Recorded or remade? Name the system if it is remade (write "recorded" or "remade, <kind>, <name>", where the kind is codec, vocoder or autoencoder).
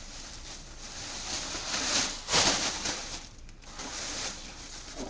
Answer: remade, vocoder, BigVGAN v2